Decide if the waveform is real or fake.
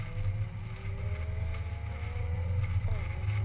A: real